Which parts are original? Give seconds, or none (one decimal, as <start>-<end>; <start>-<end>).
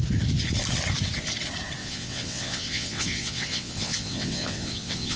0.0-1.8